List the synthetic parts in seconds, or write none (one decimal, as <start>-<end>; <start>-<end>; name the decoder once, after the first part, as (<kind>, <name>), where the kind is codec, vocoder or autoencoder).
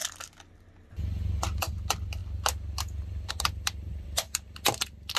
none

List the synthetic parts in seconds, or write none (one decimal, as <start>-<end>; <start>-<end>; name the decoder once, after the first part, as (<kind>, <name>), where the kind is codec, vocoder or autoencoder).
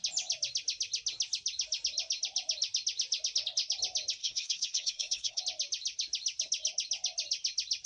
4.2-5.4 (codec, SNAC)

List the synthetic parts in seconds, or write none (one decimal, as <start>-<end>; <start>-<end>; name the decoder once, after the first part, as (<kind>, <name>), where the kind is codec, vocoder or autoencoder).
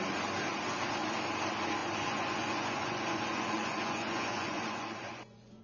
1.8-5.6 (vocoder, Vocos)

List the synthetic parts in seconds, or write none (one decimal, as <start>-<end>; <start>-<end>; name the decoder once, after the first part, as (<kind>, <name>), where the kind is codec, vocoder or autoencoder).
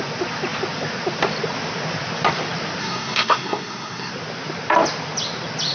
2.8-4.1 (codec, SNAC)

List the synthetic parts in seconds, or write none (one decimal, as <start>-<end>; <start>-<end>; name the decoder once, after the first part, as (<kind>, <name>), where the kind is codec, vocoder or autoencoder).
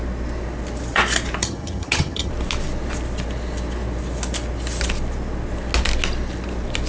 1.4-2.3 (vocoder, HiFi-GAN)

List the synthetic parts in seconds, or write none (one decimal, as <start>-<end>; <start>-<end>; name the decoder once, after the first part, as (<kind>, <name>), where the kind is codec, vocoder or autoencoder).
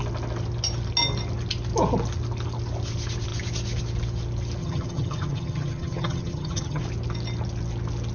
4.6-6.8 (vocoder, HiFi-GAN)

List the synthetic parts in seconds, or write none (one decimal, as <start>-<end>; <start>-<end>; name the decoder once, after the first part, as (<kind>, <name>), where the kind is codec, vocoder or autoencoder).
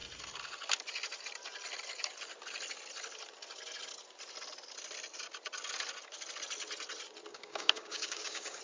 7.3-8.6 (codec, DAC)